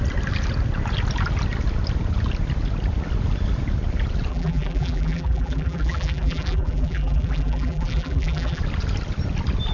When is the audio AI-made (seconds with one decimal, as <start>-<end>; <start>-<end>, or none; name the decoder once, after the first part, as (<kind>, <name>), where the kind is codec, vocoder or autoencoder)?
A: 4.3-8.6 (vocoder, BigVGAN v2)